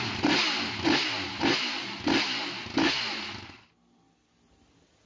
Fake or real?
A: real